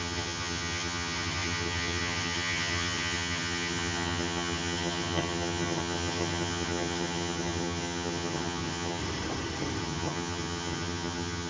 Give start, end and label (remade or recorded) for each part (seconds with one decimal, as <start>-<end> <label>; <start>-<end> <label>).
0.0-9.0 remade; 9.0-9.8 recorded; 9.8-11.5 remade